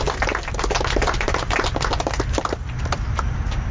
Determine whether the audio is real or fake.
real